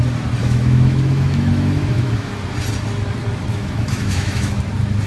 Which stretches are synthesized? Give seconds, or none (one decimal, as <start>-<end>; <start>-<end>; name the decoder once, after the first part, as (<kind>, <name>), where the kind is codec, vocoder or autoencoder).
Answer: 0.4-2.4 (autoencoder, DAC-VAE); 3.5-4.6

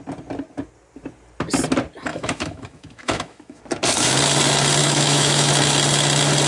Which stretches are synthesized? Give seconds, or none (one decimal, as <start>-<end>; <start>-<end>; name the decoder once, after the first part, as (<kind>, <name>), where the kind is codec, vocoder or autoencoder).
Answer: 2.1-3.6 (autoencoder, DAC-VAE); 4.8-5.5

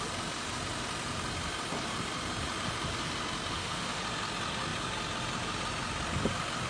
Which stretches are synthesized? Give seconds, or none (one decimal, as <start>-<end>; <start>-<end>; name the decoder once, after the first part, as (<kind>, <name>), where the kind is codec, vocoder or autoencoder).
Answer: 3.5-4.0 (autoencoder, DAC-VAE)

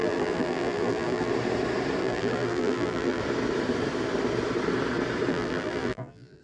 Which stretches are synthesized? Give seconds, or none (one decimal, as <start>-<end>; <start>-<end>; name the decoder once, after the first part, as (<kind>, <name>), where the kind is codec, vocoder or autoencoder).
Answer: 0.0-1.3 (vocoder, BigVGAN v2); 2.0-3.2; 5.3-6.4

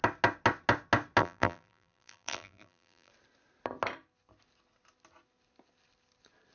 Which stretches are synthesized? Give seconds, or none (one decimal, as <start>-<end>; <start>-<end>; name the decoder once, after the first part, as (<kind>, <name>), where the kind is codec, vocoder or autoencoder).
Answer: 1.2-3.1 (vocoder, BigVGAN v2)

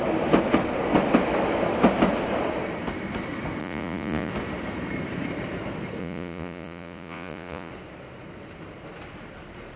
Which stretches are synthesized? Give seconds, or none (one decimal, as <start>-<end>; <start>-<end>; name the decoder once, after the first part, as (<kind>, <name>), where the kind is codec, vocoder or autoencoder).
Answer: 3.6-4.3 (vocoder, Vocos); 6.0-7.7

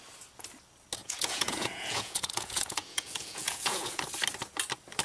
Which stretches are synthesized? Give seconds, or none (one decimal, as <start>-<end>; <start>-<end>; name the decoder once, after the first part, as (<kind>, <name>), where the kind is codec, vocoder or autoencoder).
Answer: 1.0-4.0 (vocoder, Vocos)